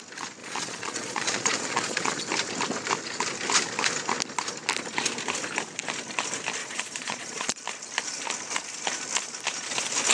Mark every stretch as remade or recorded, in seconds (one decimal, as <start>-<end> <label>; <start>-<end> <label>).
0.0-0.4 recorded; 0.4-2.2 remade; 2.2-6.6 recorded; 6.6-7.6 remade; 7.6-10.1 recorded